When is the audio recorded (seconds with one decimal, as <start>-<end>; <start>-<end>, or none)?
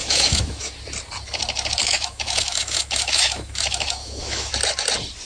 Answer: 0.7-1.8; 4.5-5.2